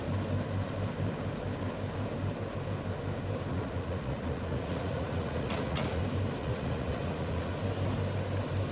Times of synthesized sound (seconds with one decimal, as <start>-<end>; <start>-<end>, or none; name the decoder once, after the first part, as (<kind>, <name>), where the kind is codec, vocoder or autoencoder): 3.5-6.0 (vocoder, Vocos); 6.4-7.5